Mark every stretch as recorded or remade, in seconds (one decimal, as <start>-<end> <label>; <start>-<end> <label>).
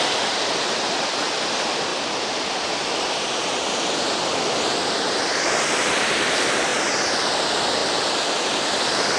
0.0-1.9 remade; 1.9-3.9 recorded; 3.9-6.7 remade; 6.7-7.3 recorded; 7.3-9.2 remade